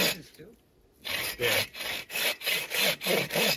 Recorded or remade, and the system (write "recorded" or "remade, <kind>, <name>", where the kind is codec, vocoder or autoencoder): recorded